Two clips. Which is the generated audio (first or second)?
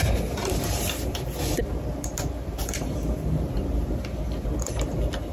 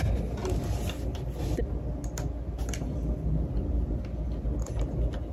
first